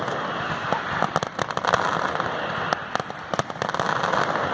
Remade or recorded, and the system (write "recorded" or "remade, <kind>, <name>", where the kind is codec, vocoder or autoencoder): recorded